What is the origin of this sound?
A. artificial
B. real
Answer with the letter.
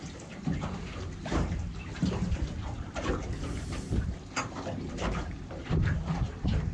A